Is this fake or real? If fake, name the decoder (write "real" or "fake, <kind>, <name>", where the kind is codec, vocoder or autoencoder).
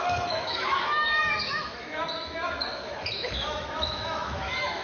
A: fake, autoencoder, DAC-VAE